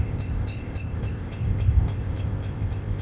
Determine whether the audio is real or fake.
fake